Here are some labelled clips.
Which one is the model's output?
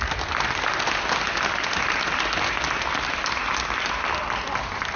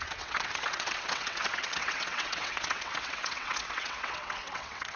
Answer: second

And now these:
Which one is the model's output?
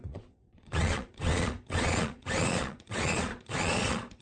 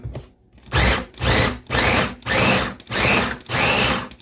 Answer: first